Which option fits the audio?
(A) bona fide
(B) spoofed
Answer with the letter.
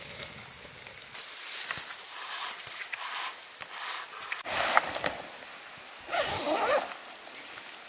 A